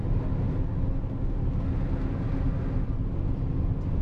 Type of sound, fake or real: real